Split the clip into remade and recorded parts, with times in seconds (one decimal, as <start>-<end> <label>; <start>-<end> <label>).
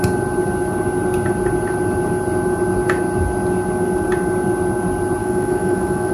0.0-5.2 recorded; 5.2-6.1 remade